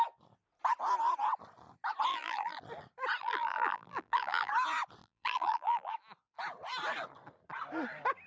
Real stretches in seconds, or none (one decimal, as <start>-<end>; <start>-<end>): 0.0-2.1; 2.6-3.2; 4.5-5.0; 5.9-8.3